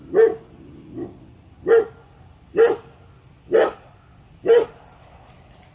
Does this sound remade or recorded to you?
recorded